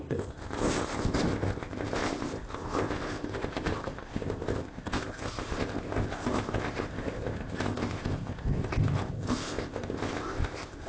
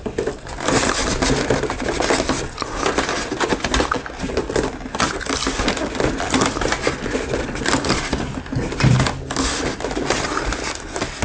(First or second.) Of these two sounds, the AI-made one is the first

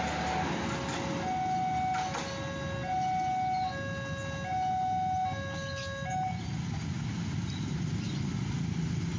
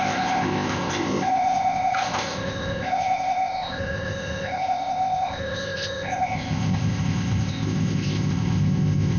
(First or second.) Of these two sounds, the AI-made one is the second